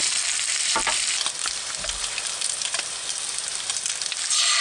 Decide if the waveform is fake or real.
fake